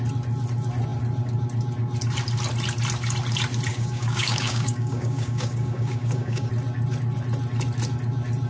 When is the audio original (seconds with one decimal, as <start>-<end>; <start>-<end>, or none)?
0.0-3.7; 6.5-8.5